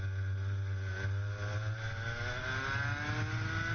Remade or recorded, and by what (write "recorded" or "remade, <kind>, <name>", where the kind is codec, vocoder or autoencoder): recorded